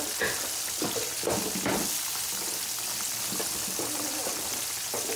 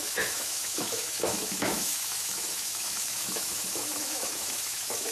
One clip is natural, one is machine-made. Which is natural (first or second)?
first